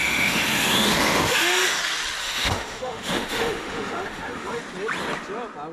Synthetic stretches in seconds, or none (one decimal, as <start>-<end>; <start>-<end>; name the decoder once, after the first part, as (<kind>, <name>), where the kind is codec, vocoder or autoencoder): 0.0-1.8 (autoencoder, DAC-VAE); 2.2-4.6